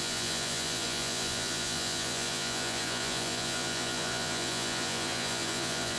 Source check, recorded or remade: remade